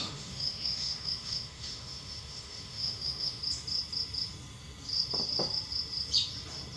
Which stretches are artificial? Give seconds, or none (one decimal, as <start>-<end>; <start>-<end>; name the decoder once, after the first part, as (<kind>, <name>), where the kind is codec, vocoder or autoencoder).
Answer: 0.0-3.4 (autoencoder, DAC-VAE)